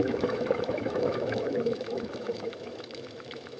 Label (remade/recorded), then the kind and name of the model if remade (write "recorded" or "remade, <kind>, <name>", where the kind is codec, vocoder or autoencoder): remade, autoencoder, DAC-VAE